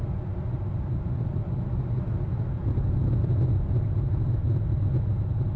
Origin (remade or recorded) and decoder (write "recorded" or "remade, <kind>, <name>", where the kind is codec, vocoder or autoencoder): recorded